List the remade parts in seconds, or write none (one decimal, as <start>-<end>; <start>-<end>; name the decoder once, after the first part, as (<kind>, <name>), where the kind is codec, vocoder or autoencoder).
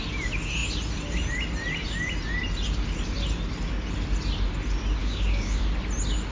5.0-5.6 (codec, DAC)